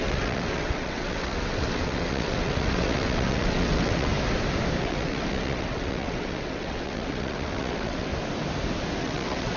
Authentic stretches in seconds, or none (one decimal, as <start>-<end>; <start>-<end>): 4.1-4.8; 8.1-9.0